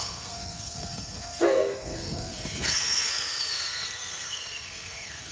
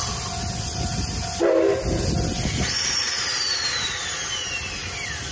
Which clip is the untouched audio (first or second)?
second